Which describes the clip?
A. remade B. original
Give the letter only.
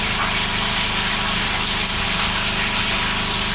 B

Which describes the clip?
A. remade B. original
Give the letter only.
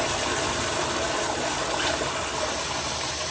A